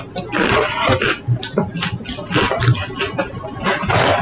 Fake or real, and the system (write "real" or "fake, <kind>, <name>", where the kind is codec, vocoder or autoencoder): real